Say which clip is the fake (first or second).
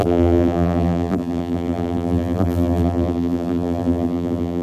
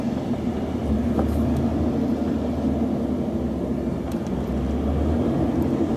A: first